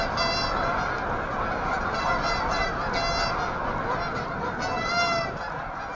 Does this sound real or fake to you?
real